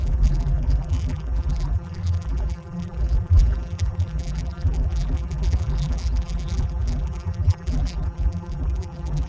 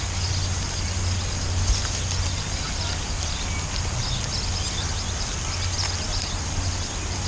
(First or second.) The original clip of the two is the second